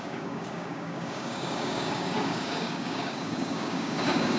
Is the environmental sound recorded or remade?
remade